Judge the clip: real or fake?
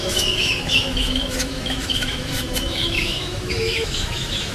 fake